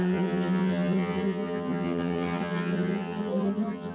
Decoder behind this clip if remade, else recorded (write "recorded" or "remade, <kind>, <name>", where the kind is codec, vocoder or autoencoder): remade, vocoder, HiFi-GAN